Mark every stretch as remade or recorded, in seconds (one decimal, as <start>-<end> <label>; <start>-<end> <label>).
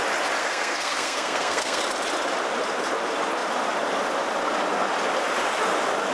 0.0-0.4 recorded; 0.4-1.8 remade; 1.8-6.1 recorded